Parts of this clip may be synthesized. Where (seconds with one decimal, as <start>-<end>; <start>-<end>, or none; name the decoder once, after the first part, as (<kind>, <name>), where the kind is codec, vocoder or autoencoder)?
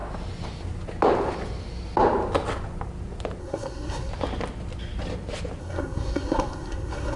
3.4-4.1 (codec, SNAC); 5.6-7.2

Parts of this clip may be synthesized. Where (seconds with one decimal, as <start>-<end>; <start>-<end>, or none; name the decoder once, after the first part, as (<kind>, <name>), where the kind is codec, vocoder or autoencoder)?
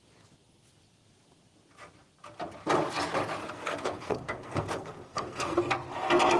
3.4-5.6 (codec, SNAC)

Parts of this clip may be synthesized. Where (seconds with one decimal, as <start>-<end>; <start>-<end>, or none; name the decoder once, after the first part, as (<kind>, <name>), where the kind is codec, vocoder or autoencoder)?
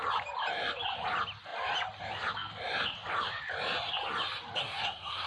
4.6-5.3 (codec, SNAC)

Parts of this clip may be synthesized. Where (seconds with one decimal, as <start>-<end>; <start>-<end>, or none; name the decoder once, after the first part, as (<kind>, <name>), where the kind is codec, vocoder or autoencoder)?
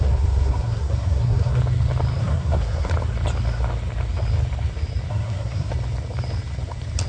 0.0-1.6 (codec, SNAC); 2.2-2.9; 5.1-5.7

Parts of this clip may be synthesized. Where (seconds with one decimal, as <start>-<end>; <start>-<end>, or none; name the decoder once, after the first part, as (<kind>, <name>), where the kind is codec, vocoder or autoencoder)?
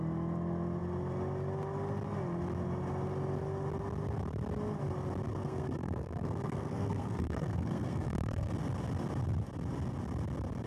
5.3-8.5 (codec, SNAC)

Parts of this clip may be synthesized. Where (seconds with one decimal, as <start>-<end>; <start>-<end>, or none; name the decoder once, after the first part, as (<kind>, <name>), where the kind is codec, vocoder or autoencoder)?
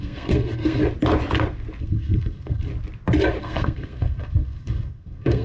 0.0-0.8 (codec, SNAC); 1.8-2.7; 3.4-5.4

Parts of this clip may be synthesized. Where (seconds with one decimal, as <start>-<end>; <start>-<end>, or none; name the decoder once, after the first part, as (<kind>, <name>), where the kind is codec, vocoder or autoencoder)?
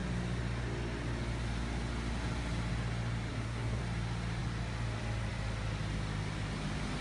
3.3-3.8 (codec, SNAC)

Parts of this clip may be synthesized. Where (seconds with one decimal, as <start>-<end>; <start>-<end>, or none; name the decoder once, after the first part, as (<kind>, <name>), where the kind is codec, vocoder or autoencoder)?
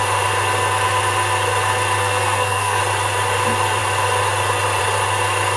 2.0-2.8 (codec, SNAC)